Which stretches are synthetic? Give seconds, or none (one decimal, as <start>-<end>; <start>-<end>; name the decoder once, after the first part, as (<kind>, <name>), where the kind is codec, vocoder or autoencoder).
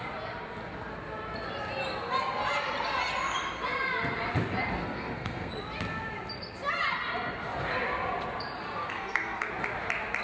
4.8-5.5 (codec, SNAC); 8.8-9.5